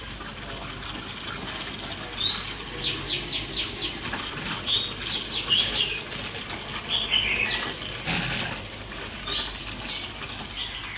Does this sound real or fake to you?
real